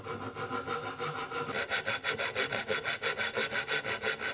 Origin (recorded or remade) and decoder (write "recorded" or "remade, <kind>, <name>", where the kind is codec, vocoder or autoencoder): recorded